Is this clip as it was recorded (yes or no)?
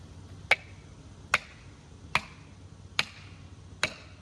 yes